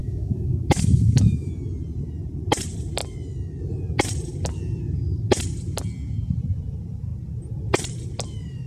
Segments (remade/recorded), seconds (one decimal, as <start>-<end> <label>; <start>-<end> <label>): 0.0-1.5 remade; 1.5-8.7 recorded